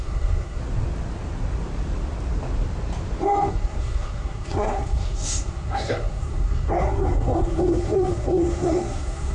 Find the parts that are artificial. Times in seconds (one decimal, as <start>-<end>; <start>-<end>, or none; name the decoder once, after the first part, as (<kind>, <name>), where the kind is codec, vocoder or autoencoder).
0.0-0.6 (codec, SNAC); 3.5-9.3